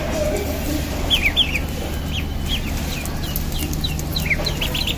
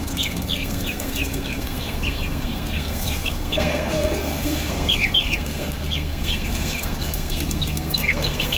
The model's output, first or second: second